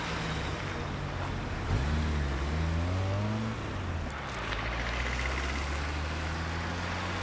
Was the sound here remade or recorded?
recorded